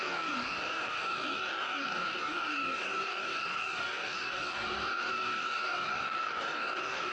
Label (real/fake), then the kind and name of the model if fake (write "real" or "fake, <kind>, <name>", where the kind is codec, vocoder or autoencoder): fake, codec, DAC